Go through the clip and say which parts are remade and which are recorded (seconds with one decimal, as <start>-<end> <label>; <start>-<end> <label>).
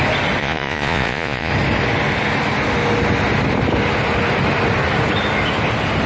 0.0-0.4 recorded; 0.4-1.5 remade; 1.5-6.1 recorded